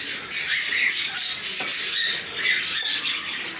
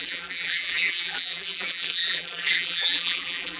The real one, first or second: first